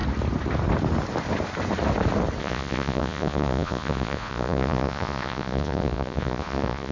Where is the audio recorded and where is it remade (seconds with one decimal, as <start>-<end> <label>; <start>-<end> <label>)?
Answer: 0.0-2.4 recorded; 2.4-6.9 remade